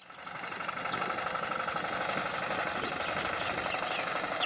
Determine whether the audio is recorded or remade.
recorded